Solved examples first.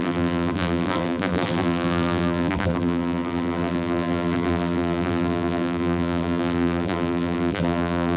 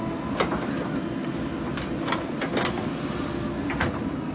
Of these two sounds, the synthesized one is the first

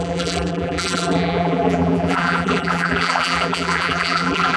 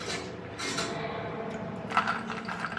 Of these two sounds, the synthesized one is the first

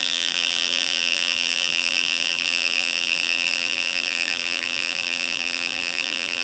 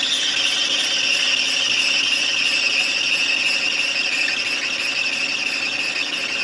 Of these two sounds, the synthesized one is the first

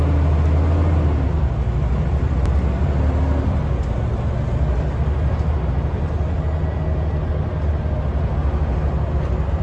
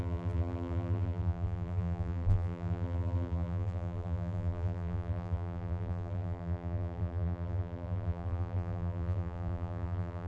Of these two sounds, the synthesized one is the second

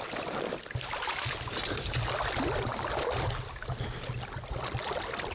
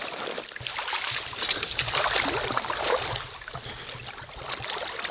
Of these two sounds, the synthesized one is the second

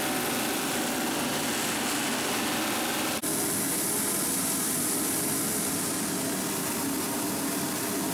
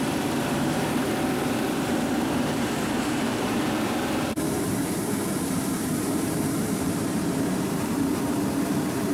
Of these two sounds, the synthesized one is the second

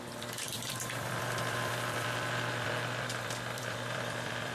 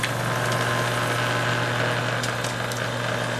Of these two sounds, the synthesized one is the first